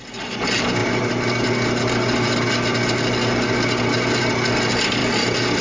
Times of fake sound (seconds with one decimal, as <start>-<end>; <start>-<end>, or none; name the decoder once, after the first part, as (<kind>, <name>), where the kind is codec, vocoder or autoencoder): none